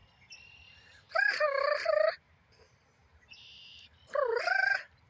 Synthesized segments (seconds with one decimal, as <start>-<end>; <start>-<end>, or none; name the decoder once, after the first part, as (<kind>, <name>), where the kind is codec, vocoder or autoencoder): 2.2-5.1 (vocoder, BigVGAN v2)